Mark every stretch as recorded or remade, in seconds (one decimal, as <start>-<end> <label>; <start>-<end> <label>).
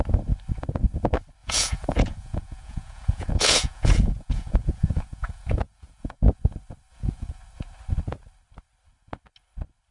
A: 0.0-1.4 recorded; 1.4-6.4 remade; 6.4-6.9 recorded; 6.9-7.4 remade; 7.4-9.9 recorded